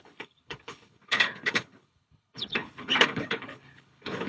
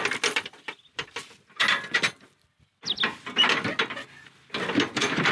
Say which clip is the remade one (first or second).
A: first